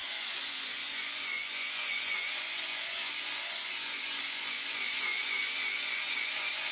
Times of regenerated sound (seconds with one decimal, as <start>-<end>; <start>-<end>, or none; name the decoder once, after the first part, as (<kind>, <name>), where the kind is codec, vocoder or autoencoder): 0.0-6.7 (vocoder, Vocos)